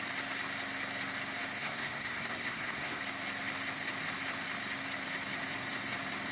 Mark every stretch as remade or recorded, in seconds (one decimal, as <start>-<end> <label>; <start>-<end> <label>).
0.0-1.6 recorded; 1.6-3.0 remade; 3.0-6.3 recorded